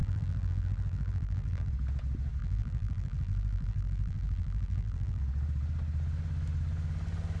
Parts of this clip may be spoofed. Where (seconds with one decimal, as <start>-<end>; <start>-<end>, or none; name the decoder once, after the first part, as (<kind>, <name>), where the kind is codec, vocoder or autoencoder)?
0.0-1.7 (vocoder, BigVGAN v2); 2.4-5.2

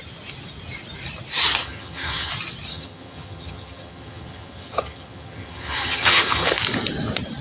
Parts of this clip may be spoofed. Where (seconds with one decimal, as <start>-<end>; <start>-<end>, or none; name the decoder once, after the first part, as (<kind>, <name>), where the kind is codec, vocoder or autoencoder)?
1.6-2.3 (vocoder, HiFi-GAN); 2.7-6.5